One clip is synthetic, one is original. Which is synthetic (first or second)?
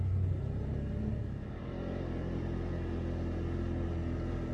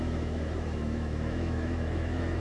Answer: second